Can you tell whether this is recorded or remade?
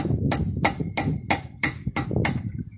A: recorded